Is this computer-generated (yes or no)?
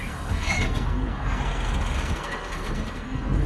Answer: yes